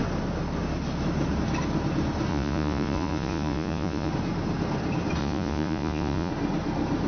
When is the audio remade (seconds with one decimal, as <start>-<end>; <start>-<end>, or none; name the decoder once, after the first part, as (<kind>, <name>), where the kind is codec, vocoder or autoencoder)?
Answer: 2.3-4.1 (vocoder, Vocos); 5.2-6.3